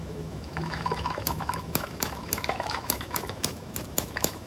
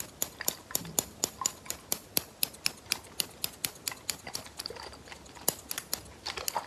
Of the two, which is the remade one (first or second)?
first